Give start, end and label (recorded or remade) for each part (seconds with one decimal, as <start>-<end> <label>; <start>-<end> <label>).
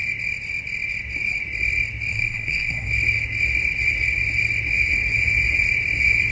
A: 0.0-2.1 recorded; 2.1-2.9 remade; 2.9-6.3 recorded